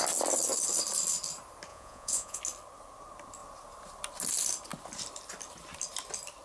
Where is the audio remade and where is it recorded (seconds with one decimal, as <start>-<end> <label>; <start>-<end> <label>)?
0.0-1.7 recorded; 1.7-2.4 remade; 2.4-6.4 recorded